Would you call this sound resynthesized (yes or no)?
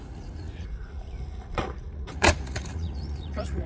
yes